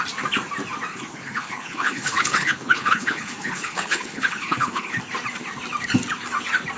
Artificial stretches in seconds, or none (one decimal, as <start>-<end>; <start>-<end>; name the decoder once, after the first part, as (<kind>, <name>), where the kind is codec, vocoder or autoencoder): 0.9-5.0 (codec, HILCodec)